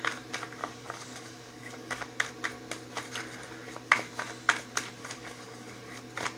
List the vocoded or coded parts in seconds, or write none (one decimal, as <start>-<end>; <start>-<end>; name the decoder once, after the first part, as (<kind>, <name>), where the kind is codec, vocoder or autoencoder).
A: 0.6-2.3 (codec, DAC); 5.0-5.8